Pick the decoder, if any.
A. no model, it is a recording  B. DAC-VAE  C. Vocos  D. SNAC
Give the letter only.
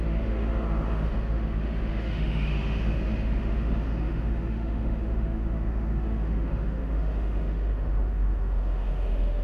B